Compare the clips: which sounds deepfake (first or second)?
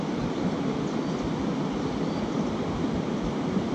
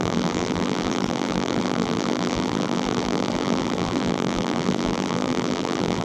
second